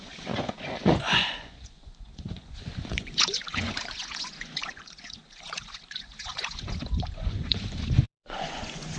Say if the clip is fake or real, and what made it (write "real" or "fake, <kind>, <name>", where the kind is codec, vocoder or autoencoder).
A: fake, vocoder, Vocos